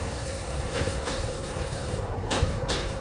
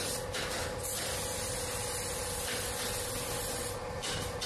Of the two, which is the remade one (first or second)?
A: first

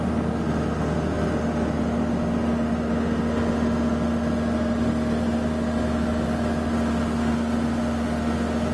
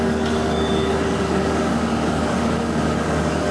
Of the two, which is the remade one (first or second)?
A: second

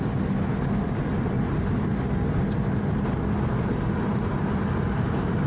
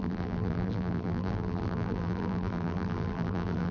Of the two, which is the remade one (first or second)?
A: second